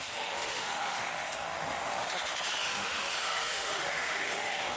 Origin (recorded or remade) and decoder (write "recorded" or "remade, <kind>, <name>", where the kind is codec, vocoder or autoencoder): remade, autoencoder, DAC-VAE